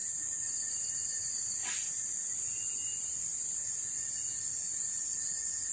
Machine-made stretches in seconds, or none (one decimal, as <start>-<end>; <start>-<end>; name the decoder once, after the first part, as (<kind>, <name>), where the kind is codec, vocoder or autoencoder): none